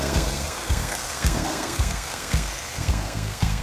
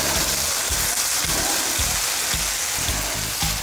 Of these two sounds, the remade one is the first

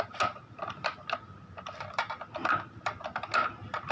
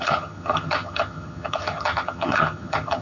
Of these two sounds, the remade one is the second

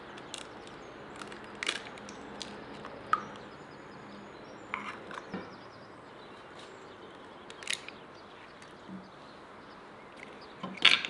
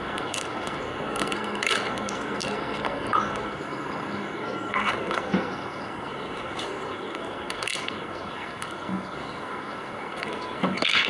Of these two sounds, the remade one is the second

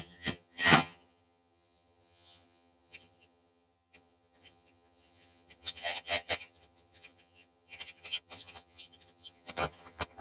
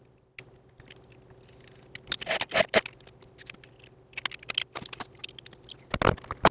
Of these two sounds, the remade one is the first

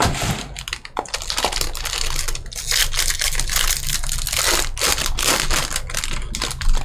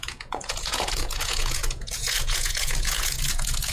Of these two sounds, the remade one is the second